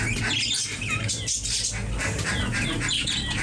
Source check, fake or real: real